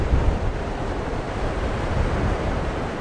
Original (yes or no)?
no